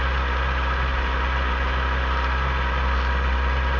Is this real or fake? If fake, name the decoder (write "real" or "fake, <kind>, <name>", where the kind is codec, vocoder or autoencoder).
real